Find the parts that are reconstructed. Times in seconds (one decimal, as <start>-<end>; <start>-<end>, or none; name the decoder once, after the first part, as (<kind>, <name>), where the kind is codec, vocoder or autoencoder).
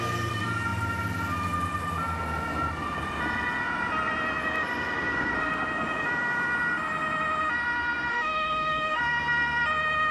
8.1-9.0 (autoencoder, DAC-VAE)